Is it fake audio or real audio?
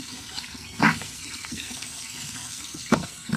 fake